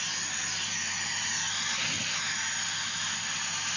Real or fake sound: real